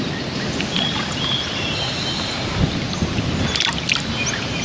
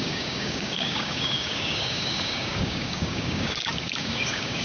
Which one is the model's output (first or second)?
second